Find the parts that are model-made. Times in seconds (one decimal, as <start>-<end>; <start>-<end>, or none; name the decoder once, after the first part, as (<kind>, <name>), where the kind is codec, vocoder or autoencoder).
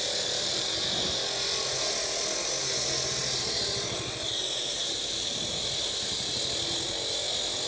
none